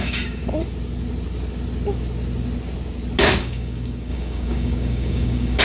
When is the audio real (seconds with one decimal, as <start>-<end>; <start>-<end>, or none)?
0.4-3.4